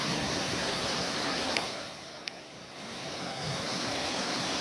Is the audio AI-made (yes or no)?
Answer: yes